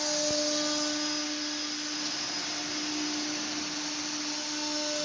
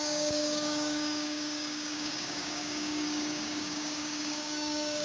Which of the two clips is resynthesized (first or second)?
second